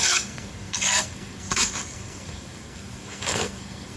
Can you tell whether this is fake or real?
fake